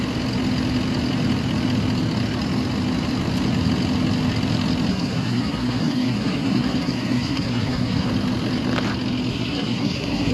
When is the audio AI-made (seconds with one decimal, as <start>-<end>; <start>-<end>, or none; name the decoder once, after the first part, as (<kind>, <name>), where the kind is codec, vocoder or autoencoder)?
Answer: 4.9-8.1 (codec, SNAC); 9.3-10.3